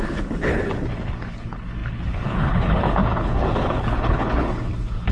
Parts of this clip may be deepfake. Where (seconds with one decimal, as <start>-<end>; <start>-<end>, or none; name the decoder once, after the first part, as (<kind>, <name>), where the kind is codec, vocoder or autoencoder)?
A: 0.0-5.1 (codec, HILCodec)